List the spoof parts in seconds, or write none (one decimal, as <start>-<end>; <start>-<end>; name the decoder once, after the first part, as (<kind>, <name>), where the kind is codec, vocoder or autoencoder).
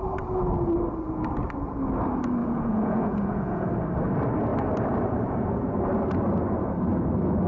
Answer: 2.4-3.7 (vocoder, Vocos)